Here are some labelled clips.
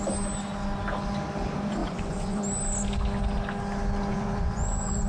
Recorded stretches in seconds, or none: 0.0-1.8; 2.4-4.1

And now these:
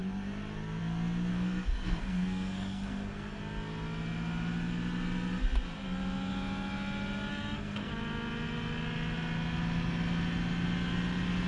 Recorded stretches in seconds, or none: 0.0-1.3; 3.4-7.3; 7.9-11.5

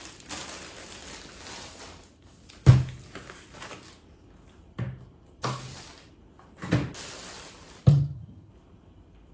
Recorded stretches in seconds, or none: 0.0-7.9; 8.5-9.3